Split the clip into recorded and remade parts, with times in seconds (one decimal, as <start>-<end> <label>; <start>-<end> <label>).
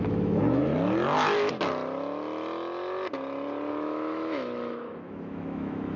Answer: 0.0-0.7 remade; 0.7-3.7 recorded; 3.7-6.0 remade